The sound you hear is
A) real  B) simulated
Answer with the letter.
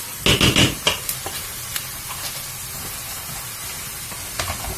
A